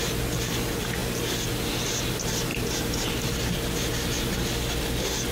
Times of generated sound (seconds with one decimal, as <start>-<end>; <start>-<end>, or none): 2.5-3.9